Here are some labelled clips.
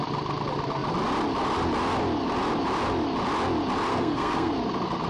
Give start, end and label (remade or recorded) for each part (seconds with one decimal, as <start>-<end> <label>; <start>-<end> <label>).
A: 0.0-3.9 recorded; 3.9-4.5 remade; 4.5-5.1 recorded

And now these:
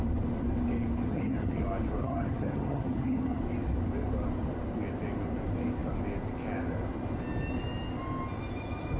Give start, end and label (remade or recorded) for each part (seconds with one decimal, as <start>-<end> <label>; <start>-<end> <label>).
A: 0.0-1.1 recorded; 1.1-1.6 remade; 1.6-2.0 recorded; 2.0-3.4 remade; 3.4-9.0 recorded

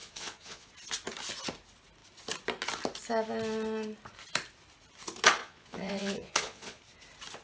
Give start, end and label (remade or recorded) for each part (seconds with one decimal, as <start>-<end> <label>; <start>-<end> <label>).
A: 0.0-0.7 remade; 0.7-5.4 recorded; 5.4-6.8 remade; 6.8-7.4 recorded

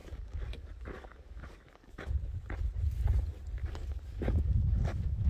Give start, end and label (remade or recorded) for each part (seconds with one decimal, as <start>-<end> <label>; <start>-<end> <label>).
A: 0.0-2.1 remade; 2.1-3.6 recorded; 3.6-5.3 remade